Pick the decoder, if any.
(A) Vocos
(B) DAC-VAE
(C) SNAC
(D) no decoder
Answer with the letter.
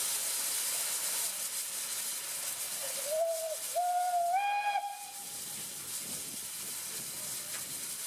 D